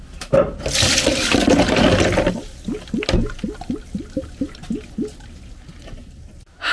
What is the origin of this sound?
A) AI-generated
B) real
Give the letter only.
B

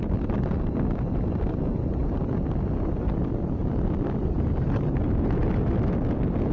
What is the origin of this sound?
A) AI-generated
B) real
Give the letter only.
B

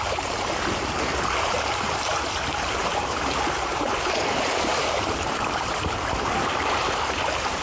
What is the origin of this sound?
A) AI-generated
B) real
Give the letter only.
A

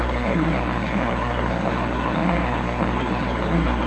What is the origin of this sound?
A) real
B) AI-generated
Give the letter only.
B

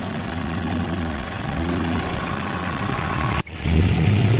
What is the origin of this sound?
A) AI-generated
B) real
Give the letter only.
A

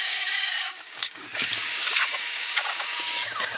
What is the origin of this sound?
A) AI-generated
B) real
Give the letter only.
A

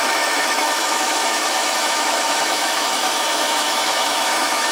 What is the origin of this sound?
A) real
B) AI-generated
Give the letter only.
B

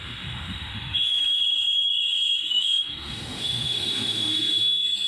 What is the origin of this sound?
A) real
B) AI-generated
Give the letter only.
B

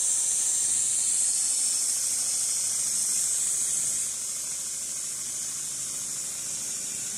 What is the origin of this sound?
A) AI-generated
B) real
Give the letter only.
B